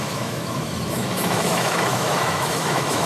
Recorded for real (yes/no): no